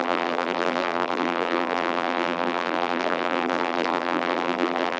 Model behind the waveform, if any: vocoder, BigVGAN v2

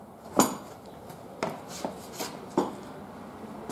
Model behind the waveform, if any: none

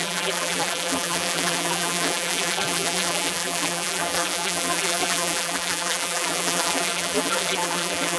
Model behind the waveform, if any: vocoder, BigVGAN v2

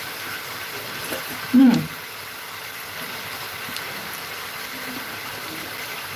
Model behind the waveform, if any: vocoder, BigVGAN v2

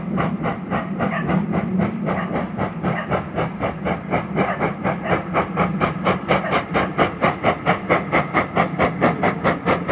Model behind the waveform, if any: none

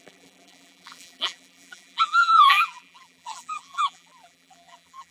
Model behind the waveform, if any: vocoder, BigVGAN v2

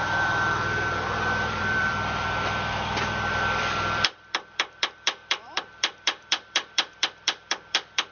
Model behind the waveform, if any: vocoder, BigVGAN v2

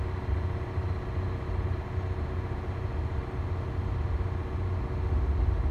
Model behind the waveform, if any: none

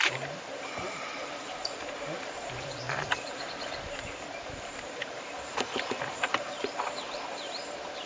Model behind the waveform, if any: vocoder, BigVGAN v2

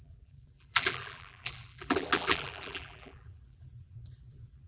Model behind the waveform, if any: vocoder, BigVGAN v2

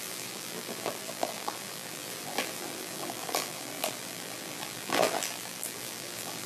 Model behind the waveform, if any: vocoder, BigVGAN v2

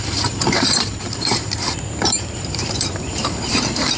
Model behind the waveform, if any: vocoder, BigVGAN v2